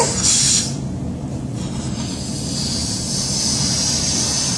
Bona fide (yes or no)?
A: yes